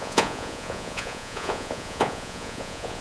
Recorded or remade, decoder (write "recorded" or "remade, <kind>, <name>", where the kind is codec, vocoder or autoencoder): remade, vocoder, Vocos